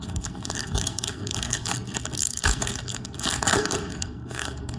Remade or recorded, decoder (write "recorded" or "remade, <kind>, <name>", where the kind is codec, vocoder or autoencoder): remade, codec, SNAC